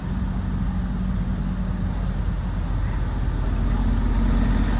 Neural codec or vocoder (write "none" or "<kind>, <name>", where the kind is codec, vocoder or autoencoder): none